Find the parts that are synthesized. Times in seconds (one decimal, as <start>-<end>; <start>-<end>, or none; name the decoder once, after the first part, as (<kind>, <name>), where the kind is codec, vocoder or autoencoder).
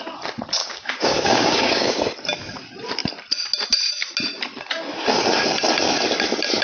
0.6-2.0 (codec, DAC)